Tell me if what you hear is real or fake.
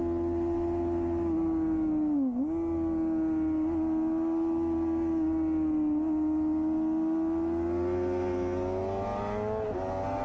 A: real